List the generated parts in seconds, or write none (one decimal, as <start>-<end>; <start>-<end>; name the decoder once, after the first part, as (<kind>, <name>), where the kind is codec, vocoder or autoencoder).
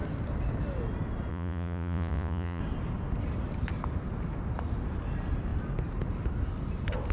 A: 1.3-2.6 (vocoder, Vocos)